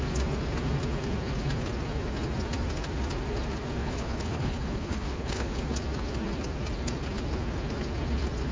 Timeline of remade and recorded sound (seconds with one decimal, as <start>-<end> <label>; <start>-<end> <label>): 0.0-3.8 recorded; 3.8-5.5 remade; 5.5-8.5 recorded